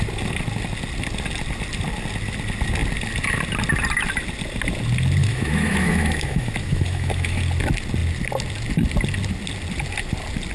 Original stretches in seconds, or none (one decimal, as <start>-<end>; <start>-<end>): 0.0-5.2; 7.4-10.5

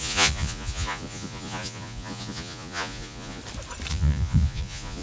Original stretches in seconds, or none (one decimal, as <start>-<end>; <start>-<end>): 3.4-3.9

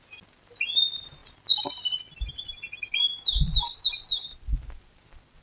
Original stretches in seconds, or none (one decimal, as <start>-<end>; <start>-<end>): 0.0-5.4

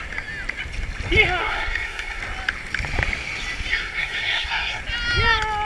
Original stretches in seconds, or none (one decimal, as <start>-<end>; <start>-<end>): 0.0-1.4; 2.2-3.7; 4.8-5.6

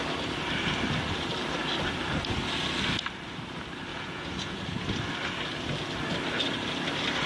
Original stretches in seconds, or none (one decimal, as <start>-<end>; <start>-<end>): 0.0-3.9; 4.6-7.3

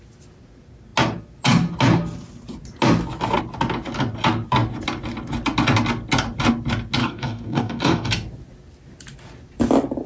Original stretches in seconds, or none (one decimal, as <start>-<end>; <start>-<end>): 0.0-7.0; 8.1-10.1

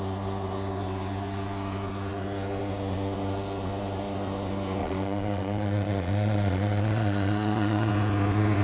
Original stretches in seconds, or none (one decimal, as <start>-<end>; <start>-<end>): 0.0-4.8; 7.9-8.6